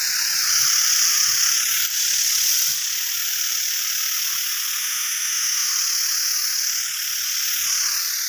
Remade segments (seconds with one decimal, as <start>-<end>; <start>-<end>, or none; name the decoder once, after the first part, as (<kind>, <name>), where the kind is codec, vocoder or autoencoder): 4.8-5.7 (autoencoder, DAC-VAE)